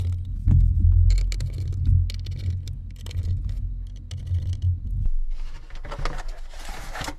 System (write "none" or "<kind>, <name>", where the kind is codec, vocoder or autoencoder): none